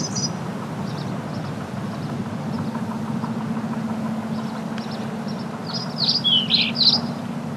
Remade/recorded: recorded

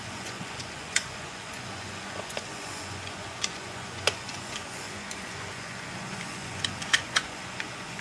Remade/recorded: remade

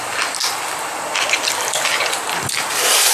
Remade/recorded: recorded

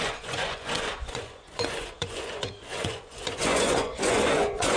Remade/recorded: remade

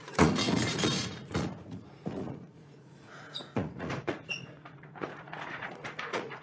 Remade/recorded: remade